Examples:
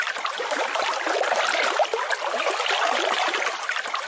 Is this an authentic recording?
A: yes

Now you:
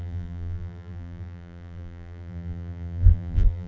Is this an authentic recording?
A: no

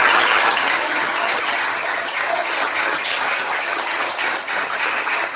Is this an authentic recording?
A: no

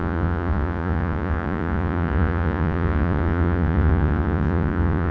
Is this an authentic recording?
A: no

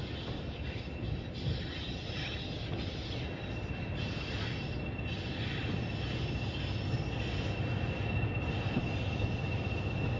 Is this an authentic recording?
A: yes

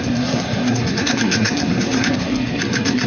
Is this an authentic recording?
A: no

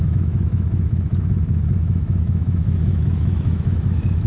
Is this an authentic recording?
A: no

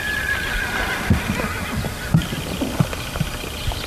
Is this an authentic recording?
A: yes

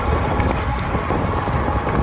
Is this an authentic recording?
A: yes